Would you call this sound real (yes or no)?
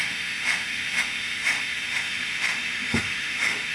no